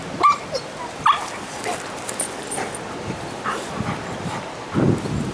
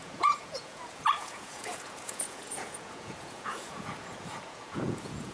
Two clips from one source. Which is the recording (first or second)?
first